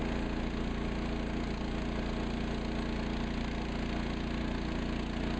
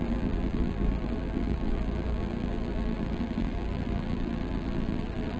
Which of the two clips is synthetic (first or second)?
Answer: second